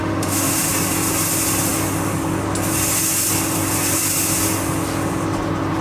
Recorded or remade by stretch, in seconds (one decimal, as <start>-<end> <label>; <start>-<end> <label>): 0.0-0.7 remade; 0.7-5.8 recorded